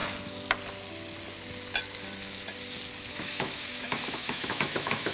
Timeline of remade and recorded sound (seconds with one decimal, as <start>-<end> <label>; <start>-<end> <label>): 0.0-3.1 recorded; 3.1-5.1 remade